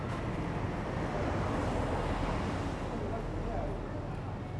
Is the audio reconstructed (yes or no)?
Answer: no